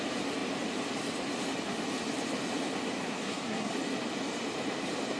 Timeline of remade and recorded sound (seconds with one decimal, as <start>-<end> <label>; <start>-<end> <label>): 0.0-3.0 recorded; 3.0-3.7 remade; 3.7-5.2 recorded